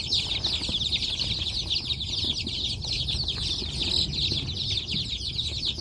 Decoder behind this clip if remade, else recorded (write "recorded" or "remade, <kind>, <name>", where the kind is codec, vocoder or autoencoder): recorded